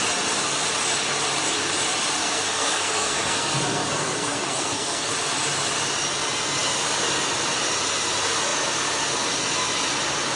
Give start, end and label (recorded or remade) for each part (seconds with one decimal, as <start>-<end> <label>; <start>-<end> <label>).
0.0-2.2 recorded; 2.2-5.1 remade; 5.1-10.4 recorded